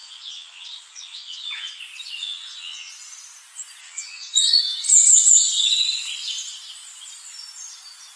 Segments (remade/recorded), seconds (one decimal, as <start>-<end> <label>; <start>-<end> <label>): 0.0-1.8 remade; 1.8-2.2 recorded; 2.2-2.9 remade; 2.9-3.8 recorded; 3.8-4.6 remade; 4.6-8.2 recorded

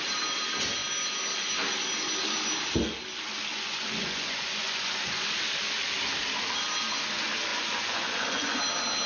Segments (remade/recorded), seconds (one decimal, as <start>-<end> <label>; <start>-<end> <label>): 0.0-3.5 recorded; 3.5-5.3 remade; 5.3-7.5 recorded; 7.5-8.6 remade; 8.6-9.1 recorded

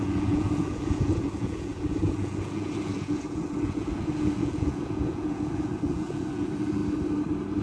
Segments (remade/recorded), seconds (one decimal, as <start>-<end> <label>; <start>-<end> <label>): 0.0-6.8 remade; 6.8-7.6 recorded

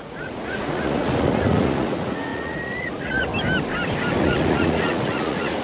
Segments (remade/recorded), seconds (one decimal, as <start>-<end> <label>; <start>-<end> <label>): 0.0-3.3 remade; 3.3-4.2 recorded; 4.2-5.6 remade